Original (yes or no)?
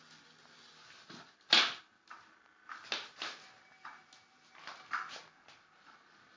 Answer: yes